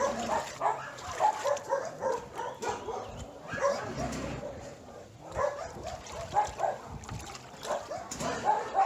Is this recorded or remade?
recorded